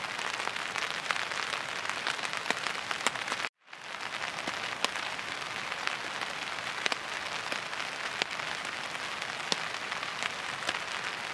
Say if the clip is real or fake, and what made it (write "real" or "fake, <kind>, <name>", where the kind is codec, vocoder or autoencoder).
real